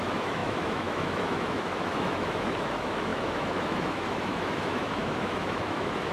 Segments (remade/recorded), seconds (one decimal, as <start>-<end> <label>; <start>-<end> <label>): 0.0-6.1 remade

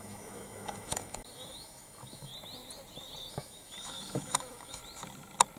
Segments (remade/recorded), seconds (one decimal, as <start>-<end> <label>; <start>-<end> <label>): 0.0-2.3 remade; 2.3-3.3 recorded; 3.3-4.8 remade; 4.8-5.6 recorded

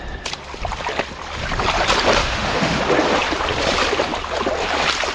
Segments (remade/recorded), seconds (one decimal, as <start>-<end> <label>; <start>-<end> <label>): 0.0-2.2 recorded; 2.2-2.8 remade; 2.8-5.1 recorded

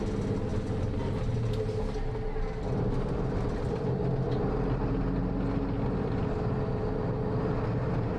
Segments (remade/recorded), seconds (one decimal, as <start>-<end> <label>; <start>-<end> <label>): 0.0-8.2 recorded

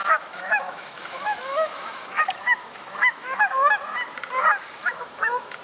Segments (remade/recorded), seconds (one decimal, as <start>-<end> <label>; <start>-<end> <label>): 0.0-3.4 remade; 3.4-4.8 recorded; 4.8-5.6 remade

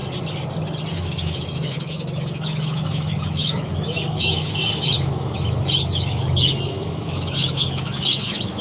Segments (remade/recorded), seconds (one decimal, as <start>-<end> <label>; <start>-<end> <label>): 0.0-0.9 recorded; 0.9-8.6 remade